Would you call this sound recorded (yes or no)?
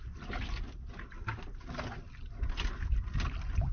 yes